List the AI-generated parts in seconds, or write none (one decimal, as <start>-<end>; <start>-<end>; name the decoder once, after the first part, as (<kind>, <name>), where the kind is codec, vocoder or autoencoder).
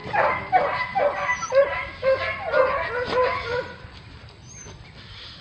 none